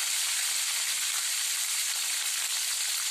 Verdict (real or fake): fake